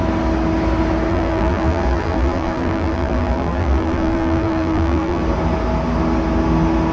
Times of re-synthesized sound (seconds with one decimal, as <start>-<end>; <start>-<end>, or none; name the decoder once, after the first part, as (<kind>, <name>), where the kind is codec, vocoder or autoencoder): 1.1-5.2 (vocoder, BigVGAN v2)

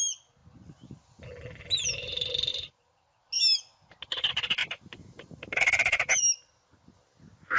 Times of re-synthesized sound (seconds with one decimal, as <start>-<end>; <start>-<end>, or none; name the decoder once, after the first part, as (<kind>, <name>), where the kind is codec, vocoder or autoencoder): 4.6-6.1 (vocoder, BigVGAN v2)

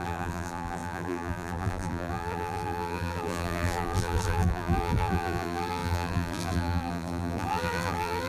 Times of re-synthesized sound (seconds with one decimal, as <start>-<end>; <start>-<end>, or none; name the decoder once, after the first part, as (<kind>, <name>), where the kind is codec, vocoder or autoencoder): 0.0-8.3 (vocoder, BigVGAN v2)

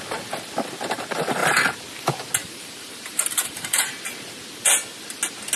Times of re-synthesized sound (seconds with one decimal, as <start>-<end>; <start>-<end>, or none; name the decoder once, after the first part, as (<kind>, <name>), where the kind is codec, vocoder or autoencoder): 2.4-3.9 (vocoder, BigVGAN v2)

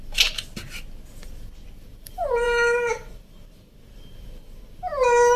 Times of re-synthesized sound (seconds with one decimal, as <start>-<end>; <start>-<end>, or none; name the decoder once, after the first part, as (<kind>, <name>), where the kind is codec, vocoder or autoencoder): 1.9-5.4 (vocoder, BigVGAN v2)

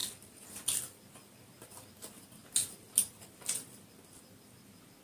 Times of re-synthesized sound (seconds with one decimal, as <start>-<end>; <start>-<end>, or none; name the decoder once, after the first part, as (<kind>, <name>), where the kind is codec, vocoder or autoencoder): none

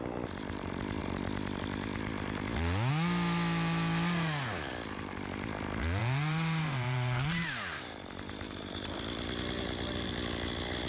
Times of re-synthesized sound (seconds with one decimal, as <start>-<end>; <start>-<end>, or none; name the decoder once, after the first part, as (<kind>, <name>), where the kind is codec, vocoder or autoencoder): 6.0-8.6 (vocoder, BigVGAN v2)